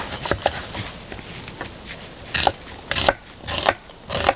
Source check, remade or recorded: recorded